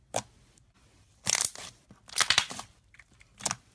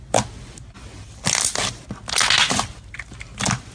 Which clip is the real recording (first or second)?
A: second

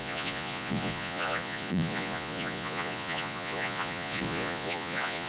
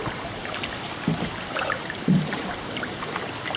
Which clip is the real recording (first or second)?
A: second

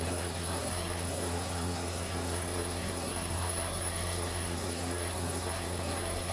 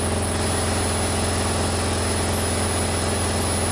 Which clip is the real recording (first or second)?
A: second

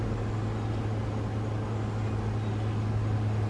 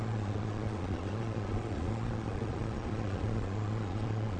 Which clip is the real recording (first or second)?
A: first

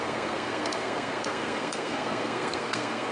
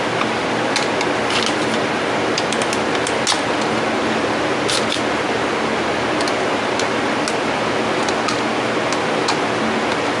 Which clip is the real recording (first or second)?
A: second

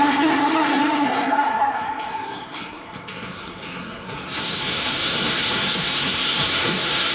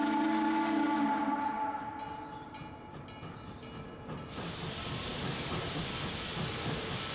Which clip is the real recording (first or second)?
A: second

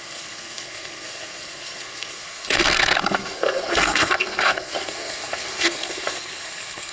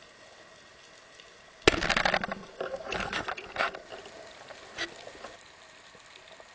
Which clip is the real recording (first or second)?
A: second